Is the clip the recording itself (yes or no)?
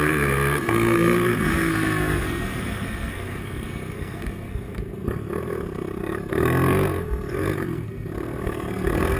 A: no